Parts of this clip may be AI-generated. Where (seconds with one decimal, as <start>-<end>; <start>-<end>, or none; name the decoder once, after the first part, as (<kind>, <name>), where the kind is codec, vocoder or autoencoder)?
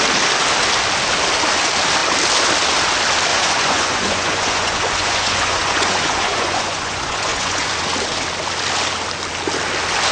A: 3.3-7.7 (vocoder, Vocos)